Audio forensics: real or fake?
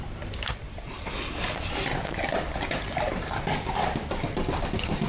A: real